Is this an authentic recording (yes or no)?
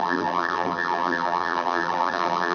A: no